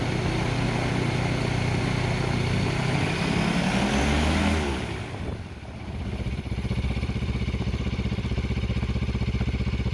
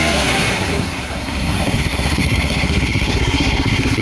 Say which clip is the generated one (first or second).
second